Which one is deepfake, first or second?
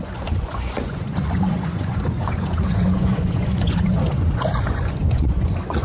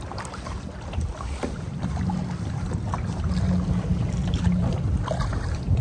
first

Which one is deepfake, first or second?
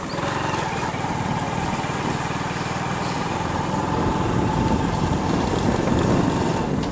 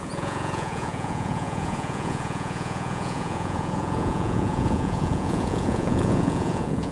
second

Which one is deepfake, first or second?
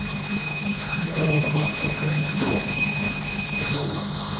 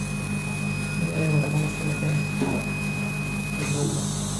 first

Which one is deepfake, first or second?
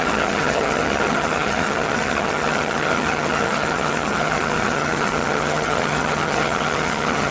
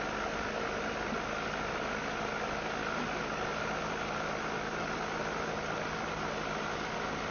first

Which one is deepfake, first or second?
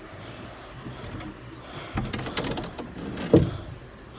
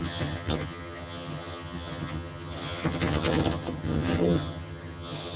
second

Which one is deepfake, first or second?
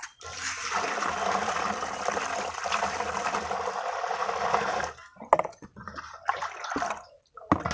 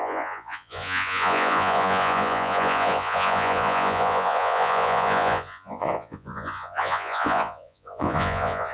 second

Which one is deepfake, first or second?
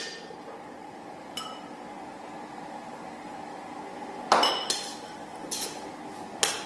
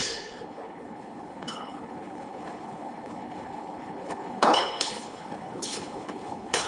second